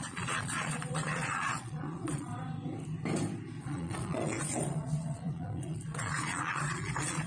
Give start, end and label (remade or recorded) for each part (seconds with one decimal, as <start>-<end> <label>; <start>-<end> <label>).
0.0-2.3 remade; 2.3-3.6 recorded; 3.6-7.3 remade